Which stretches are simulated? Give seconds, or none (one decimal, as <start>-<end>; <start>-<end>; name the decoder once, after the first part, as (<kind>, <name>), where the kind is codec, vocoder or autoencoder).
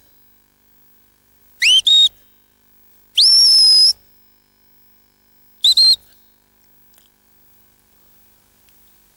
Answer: none